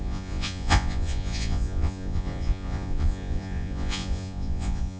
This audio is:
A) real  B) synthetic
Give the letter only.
B